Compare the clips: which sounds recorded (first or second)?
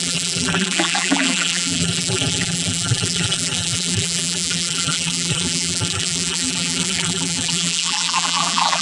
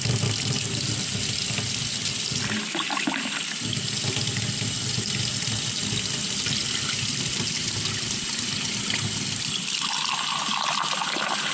second